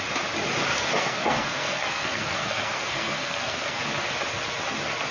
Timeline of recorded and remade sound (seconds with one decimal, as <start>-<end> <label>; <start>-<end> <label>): 0.0-0.7 recorded; 0.7-3.8 remade; 3.8-5.1 recorded